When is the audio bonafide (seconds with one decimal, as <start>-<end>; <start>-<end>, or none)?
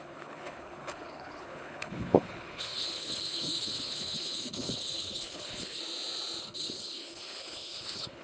5.8-6.4